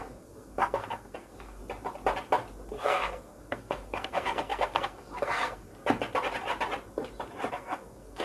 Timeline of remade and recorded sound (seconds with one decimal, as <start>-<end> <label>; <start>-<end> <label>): 0.0-1.6 remade; 1.6-2.7 recorded; 2.7-5.7 remade; 5.7-7.5 recorded; 7.5-8.2 remade

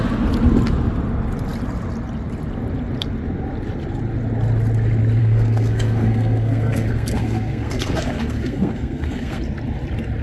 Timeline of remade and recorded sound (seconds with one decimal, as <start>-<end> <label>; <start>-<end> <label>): 0.0-5.2 recorded; 5.2-9.4 remade; 9.4-10.2 recorded

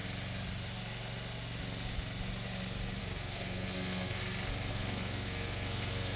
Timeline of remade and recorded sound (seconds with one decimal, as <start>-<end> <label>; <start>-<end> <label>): 0.0-3.0 recorded; 3.0-4.2 remade; 4.2-4.7 recorded; 4.7-6.2 remade